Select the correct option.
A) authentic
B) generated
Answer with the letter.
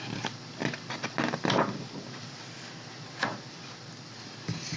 A